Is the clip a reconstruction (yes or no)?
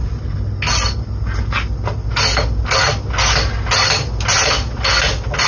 no